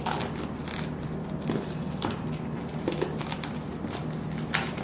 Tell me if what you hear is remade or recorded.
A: recorded